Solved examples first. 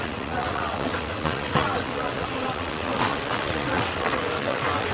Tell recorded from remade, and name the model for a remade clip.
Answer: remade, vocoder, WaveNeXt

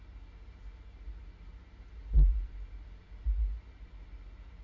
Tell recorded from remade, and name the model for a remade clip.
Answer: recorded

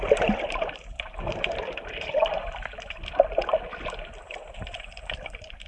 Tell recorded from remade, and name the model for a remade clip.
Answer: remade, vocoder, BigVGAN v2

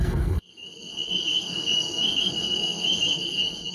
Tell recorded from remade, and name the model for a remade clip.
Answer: remade, codec, SNAC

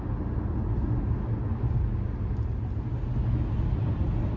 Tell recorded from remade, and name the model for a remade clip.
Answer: recorded